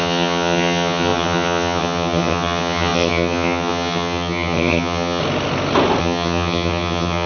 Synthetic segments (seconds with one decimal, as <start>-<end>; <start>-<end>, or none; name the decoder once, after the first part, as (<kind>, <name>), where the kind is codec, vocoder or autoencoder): 0.0-5.2 (vocoder, HiFi-GAN); 6.0-7.3